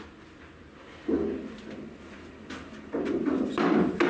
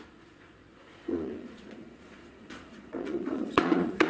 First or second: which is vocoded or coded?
second